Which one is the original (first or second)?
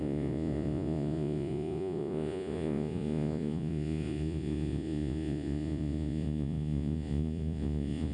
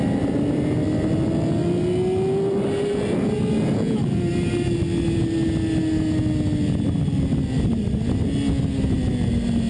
second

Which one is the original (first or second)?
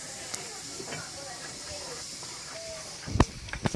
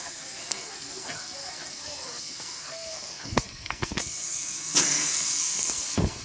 first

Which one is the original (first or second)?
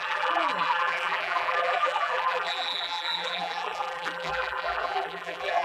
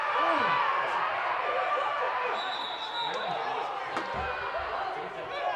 second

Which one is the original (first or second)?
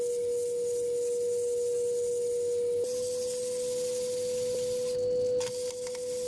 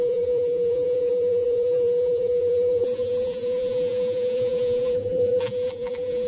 first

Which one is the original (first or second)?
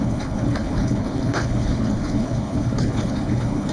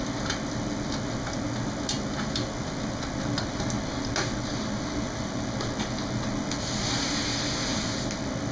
second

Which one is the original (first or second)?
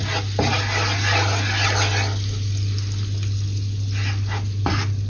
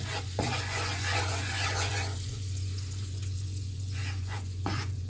first